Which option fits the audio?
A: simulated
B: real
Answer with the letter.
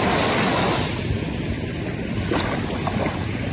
B